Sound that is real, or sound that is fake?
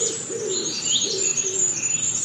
real